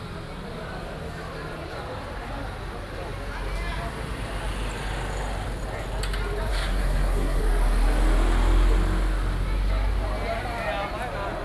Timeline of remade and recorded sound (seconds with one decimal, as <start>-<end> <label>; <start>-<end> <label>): 0.0-6.5 recorded; 6.5-7.4 remade; 7.4-11.4 recorded